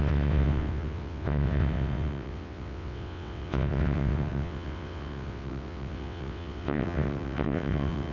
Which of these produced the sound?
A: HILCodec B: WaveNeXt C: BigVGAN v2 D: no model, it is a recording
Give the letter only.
B